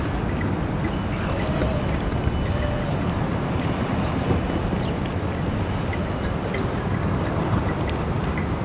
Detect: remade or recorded recorded